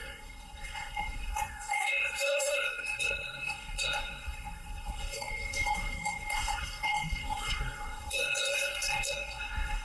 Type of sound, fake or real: fake